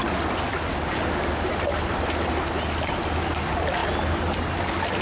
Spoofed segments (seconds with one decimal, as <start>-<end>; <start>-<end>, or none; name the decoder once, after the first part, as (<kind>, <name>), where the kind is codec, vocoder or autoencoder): none